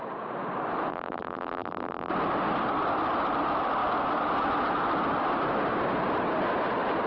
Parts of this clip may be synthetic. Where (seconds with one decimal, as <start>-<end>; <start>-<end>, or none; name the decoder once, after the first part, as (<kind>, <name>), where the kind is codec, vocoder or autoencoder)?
0.9-2.1 (vocoder, BigVGAN v2)